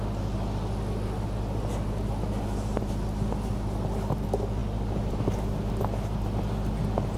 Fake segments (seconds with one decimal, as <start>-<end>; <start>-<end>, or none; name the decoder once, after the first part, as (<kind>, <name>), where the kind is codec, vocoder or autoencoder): 4.6-5.2 (vocoder, BigVGAN v2)